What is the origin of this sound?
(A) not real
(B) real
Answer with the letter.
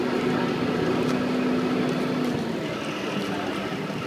B